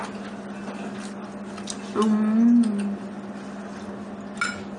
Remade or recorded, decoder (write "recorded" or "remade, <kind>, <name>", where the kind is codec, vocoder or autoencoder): recorded